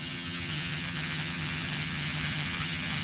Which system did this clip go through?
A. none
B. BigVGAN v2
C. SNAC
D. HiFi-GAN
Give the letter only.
D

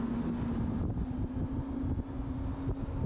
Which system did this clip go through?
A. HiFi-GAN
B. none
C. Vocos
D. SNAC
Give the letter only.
B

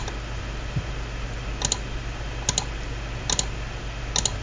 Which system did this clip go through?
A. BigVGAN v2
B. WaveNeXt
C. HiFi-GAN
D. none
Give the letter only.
D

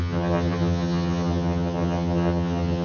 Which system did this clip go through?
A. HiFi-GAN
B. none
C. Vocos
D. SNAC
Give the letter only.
A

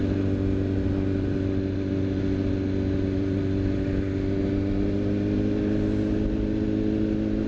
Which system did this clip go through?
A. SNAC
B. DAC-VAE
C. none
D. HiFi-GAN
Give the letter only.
C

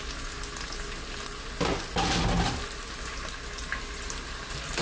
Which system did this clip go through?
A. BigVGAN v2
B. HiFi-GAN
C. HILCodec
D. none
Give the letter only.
D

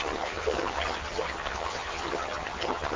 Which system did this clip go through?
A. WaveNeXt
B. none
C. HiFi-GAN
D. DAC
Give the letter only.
C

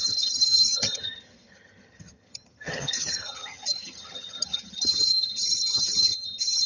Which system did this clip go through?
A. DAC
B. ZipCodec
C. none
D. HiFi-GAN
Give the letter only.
D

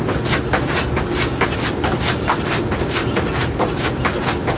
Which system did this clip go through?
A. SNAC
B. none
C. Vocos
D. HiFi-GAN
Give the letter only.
B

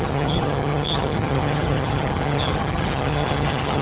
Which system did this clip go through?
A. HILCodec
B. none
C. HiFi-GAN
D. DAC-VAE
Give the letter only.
C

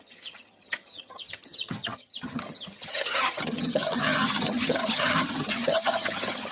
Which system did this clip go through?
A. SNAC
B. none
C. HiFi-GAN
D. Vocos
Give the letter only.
C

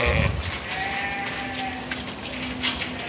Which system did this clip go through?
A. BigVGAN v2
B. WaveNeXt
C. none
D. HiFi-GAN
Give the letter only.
C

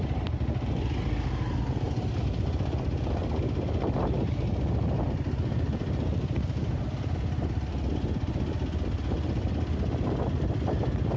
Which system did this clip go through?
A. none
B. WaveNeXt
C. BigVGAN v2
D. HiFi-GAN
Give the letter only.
A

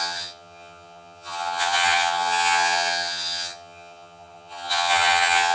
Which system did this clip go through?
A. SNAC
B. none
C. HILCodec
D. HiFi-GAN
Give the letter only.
D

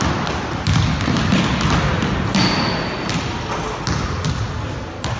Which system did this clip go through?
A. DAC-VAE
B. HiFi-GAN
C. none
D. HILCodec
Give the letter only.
C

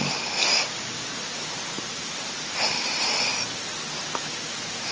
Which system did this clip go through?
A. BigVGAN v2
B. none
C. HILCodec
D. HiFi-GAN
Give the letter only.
B